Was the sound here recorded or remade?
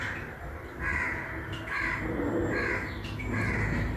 recorded